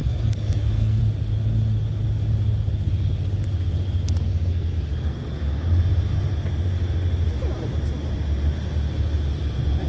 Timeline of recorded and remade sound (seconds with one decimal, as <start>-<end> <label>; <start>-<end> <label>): 0.0-1.0 remade; 1.0-4.3 recorded; 4.3-5.4 remade; 5.4-9.9 recorded